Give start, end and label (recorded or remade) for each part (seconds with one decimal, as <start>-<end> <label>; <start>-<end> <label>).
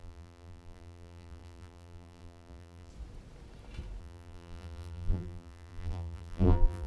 0.0-2.9 remade; 2.9-4.0 recorded; 4.0-6.9 remade